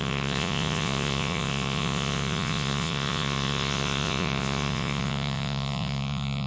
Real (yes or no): no